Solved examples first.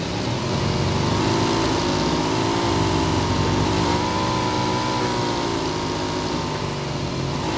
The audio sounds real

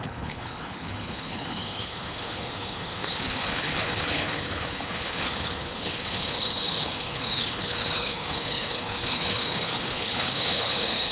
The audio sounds fake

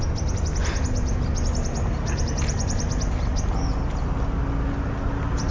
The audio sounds real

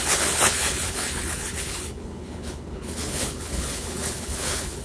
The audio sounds fake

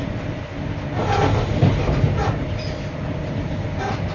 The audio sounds real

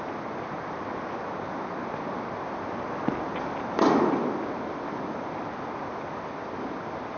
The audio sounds real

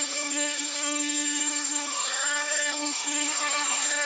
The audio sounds fake